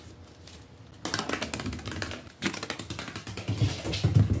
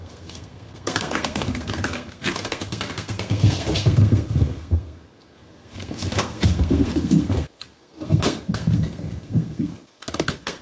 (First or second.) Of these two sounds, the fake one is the second